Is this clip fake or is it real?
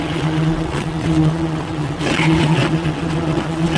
fake